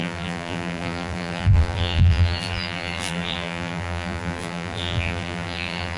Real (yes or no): no